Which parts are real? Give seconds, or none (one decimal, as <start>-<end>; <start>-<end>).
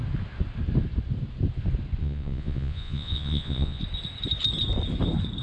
0.0-2.0; 3.8-5.4